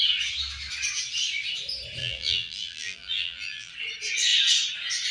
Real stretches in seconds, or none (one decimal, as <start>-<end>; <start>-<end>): 0.0-2.0; 3.7-5.1